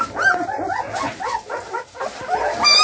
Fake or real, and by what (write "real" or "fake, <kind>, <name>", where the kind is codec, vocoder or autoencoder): real